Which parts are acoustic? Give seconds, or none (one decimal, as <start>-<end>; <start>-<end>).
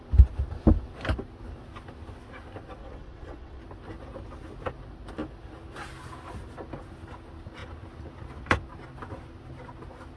0.0-2.8; 3.6-10.2